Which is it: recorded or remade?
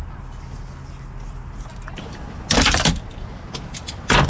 recorded